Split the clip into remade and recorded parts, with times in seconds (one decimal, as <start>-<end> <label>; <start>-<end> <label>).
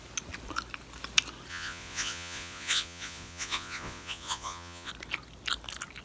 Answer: 0.0-1.5 recorded; 1.5-4.9 remade; 4.9-6.0 recorded